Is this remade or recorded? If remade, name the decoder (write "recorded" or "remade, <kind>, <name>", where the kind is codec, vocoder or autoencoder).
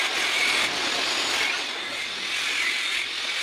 recorded